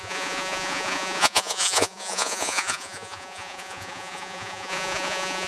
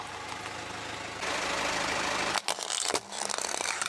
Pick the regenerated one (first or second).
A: first